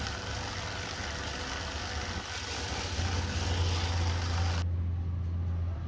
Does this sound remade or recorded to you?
recorded